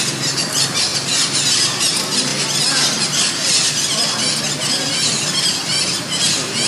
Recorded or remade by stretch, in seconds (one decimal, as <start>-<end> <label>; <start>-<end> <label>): 0.0-6.7 recorded